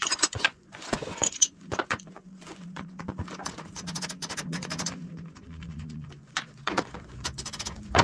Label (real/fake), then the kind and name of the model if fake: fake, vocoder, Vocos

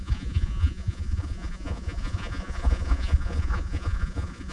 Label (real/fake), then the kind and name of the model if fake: fake, vocoder, Vocos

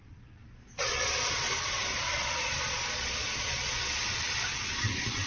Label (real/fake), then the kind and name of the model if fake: fake, vocoder, Vocos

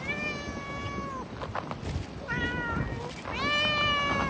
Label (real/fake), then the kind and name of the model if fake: real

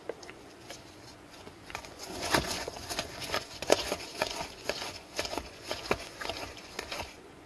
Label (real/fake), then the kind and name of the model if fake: fake, vocoder, Vocos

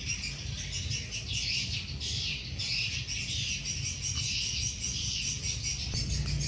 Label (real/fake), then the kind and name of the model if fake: real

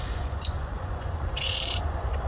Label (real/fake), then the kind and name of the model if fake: fake, vocoder, Vocos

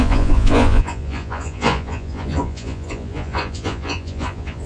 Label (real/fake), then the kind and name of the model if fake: fake, vocoder, Vocos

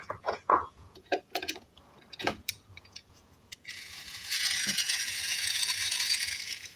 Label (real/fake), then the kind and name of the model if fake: fake, vocoder, Vocos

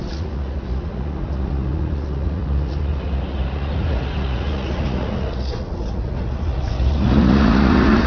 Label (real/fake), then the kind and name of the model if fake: fake, vocoder, Vocos